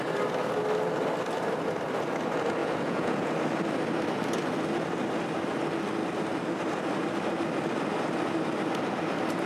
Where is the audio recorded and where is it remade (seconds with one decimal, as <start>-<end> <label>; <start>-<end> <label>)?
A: 0.0-2.6 recorded; 2.6-3.3 remade; 3.3-9.5 recorded